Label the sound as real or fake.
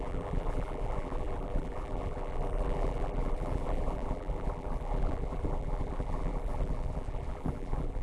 fake